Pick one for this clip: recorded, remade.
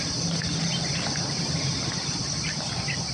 recorded